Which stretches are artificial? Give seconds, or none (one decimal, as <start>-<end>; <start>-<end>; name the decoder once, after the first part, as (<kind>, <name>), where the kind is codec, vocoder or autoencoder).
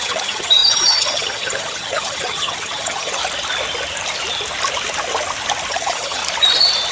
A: 0.0-3.2 (vocoder, HiFi-GAN); 5.7-6.2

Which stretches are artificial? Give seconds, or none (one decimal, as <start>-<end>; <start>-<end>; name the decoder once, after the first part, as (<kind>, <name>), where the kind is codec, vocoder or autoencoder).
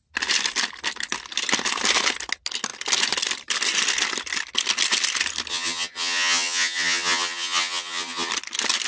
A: 5.5-8.3 (vocoder, HiFi-GAN)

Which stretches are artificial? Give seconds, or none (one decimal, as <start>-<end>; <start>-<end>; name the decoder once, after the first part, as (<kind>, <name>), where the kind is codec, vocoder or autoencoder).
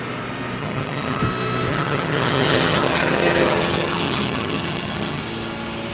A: 0.6-1.2 (vocoder, HiFi-GAN); 1.7-5.2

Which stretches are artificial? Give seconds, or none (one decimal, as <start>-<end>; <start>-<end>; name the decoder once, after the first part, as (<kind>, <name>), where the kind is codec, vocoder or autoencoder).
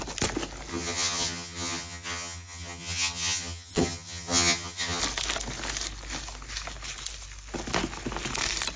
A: 0.7-5.0 (vocoder, HiFi-GAN)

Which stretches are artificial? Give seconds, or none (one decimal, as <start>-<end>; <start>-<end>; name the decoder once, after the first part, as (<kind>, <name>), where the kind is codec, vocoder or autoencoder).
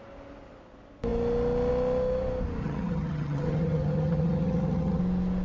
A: 2.6-5.0 (vocoder, HiFi-GAN)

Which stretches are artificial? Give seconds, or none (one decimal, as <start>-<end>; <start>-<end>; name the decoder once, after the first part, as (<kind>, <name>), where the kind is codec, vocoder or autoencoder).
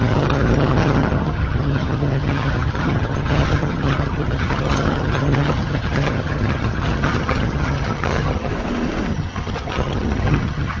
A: 0.0-8.5 (vocoder, HiFi-GAN); 9.1-10.8